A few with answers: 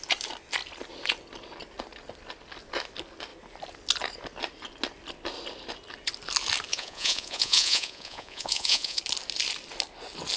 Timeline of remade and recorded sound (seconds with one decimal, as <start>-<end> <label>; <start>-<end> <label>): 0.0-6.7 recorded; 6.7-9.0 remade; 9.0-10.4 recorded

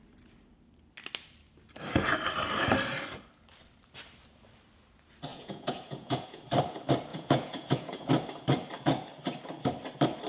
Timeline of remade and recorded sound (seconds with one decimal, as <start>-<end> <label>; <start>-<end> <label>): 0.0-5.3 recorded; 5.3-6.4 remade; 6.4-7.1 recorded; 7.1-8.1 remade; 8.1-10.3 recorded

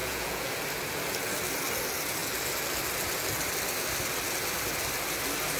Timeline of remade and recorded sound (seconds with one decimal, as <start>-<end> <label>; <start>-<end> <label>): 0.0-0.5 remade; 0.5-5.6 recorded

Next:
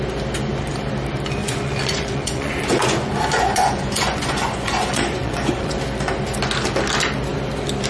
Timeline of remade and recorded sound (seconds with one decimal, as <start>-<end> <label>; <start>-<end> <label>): 0.0-1.4 recorded; 1.4-5.8 remade; 5.8-7.9 recorded

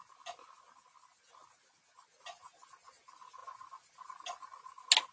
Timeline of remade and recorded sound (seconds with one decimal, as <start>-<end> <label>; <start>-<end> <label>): 0.0-5.1 recorded

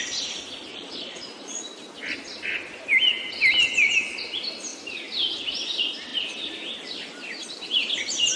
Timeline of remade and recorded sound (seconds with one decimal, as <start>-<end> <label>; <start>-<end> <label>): 0.0-0.7 recorded; 0.7-1.6 remade; 1.6-8.4 recorded